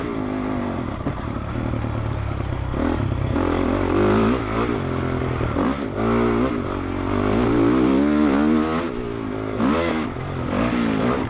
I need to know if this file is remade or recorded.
recorded